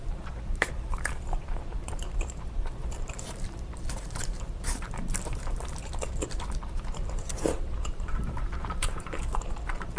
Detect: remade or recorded remade